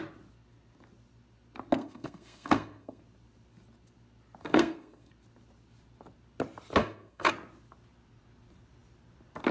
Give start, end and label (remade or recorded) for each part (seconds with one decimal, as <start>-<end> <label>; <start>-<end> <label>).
0.0-1.8 recorded; 1.8-3.0 remade; 3.0-4.4 recorded; 4.4-5.1 remade; 5.1-6.8 recorded; 6.8-7.3 remade; 7.3-9.5 recorded